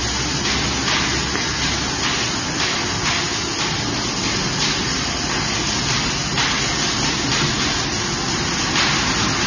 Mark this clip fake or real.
real